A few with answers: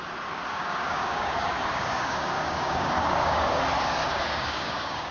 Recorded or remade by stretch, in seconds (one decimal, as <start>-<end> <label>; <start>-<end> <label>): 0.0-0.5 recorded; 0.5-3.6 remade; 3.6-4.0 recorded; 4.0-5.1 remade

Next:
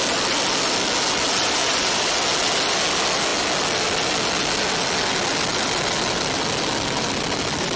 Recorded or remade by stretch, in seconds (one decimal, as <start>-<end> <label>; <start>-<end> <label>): 0.0-1.4 recorded; 1.4-2.1 remade; 2.1-7.8 recorded

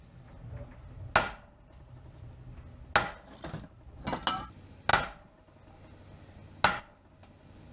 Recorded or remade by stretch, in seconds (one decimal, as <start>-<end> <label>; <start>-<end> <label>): 0.0-7.7 recorded

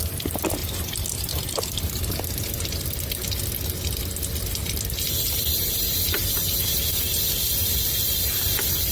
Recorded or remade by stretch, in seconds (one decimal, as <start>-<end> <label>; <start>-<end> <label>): 0.0-0.6 remade; 0.6-1.2 recorded; 1.2-3.2 remade; 3.2-5.4 recorded; 5.4-6.4 remade; 6.4-7.9 recorded; 7.9-8.9 remade